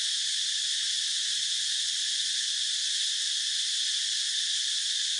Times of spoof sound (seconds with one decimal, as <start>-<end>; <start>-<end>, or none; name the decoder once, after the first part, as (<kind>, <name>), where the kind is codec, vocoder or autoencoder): none